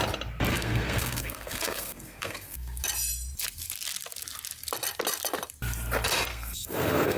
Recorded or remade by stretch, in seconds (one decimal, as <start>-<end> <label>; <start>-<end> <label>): 0.0-0.5 recorded; 0.5-2.8 remade; 2.8-6.3 recorded; 6.3-7.2 remade